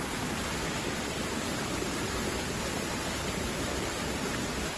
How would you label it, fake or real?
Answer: real